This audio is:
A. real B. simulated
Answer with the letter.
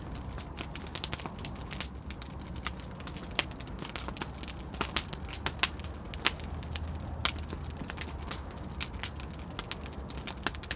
A